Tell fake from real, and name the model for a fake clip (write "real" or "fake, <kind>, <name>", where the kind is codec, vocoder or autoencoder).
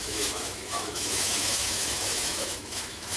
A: fake, autoencoder, DAC-VAE